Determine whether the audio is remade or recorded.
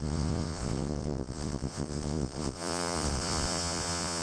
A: remade